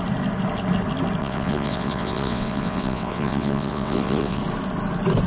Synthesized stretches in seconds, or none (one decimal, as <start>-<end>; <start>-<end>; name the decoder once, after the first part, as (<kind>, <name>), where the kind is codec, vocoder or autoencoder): 1.2-4.4 (vocoder, WaveNeXt)